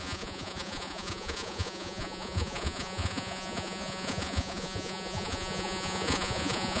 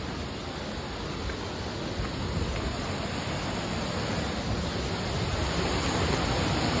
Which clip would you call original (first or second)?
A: second